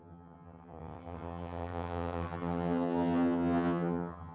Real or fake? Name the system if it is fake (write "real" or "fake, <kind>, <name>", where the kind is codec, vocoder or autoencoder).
fake, vocoder, HiFi-GAN